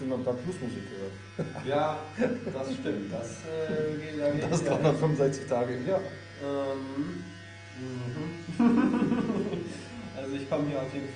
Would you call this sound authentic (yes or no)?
yes